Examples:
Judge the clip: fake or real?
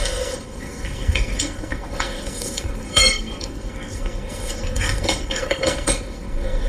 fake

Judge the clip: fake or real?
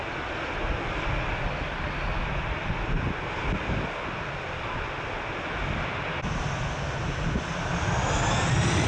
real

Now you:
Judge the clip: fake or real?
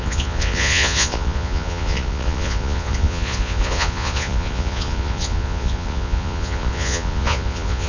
fake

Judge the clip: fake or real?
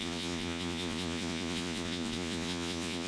fake